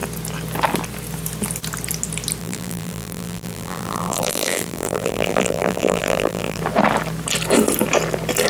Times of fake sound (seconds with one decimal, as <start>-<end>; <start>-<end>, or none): 2.4-6.6